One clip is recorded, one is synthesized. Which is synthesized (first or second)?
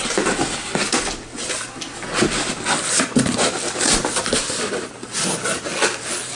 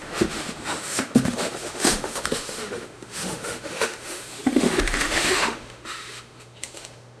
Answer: second